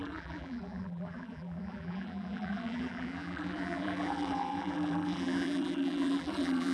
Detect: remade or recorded remade